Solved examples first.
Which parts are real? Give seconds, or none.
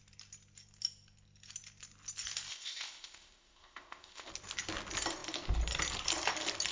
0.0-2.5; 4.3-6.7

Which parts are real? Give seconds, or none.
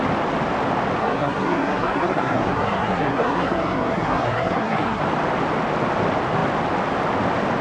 0.0-1.0; 5.0-7.6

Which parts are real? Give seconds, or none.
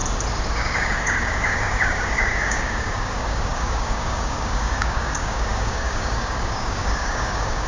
0.0-0.5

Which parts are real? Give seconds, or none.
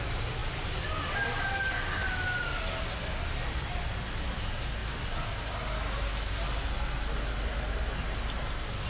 0.0-8.9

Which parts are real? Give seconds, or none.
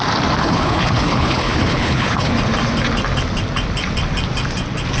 0.0-0.4; 2.3-5.0